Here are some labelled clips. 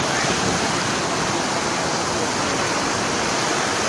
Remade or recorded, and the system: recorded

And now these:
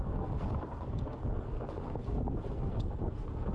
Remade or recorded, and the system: remade, codec, SNAC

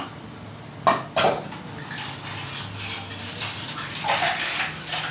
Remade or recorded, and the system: recorded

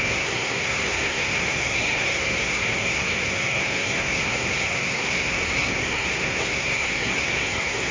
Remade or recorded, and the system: remade, codec, SNAC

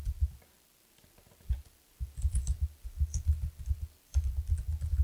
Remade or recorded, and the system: recorded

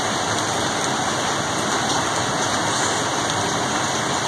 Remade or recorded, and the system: recorded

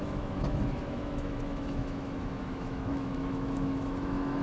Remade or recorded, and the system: remade, autoencoder, DAC-VAE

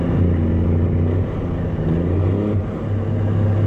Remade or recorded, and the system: recorded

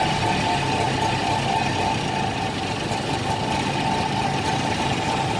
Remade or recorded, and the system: recorded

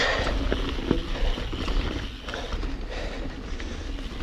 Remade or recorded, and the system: recorded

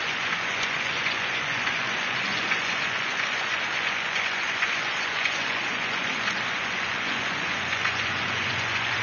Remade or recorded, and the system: remade, vocoder, Vocos